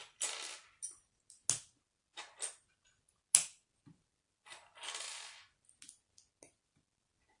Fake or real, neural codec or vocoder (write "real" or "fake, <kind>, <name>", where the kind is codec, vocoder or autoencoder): real